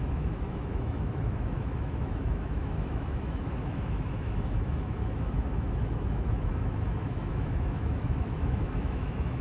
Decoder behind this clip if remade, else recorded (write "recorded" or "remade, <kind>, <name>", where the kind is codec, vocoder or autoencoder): remade, autoencoder, DAC-VAE